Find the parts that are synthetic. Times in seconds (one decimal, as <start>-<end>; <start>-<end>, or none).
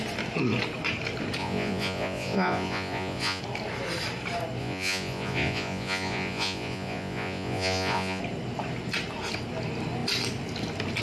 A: 1.4-3.4; 4.6-8.2